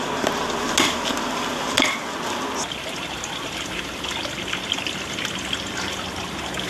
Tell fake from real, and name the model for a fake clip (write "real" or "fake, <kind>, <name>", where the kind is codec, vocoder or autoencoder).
real